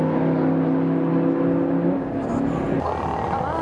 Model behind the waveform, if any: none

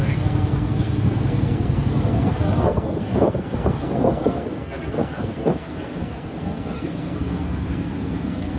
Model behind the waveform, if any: codec, SNAC